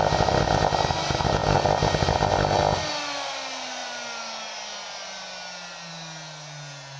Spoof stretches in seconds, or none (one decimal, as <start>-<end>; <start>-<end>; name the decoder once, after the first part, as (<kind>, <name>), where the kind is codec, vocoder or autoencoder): none